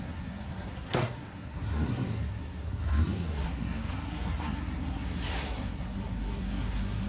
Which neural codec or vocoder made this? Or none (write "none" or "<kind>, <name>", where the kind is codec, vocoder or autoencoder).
codec, SNAC